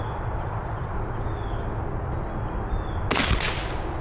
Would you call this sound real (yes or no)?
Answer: yes